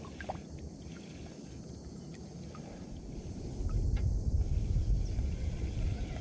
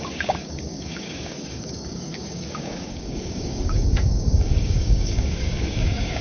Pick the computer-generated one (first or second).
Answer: second